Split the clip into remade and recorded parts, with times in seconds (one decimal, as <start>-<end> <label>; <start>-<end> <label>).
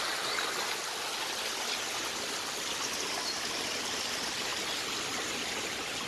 0.0-4.5 recorded; 4.5-6.1 remade